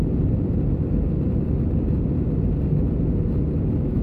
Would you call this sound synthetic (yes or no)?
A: no